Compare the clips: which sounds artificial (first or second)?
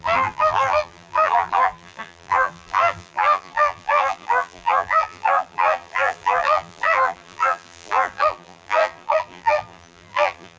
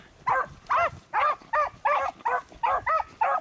first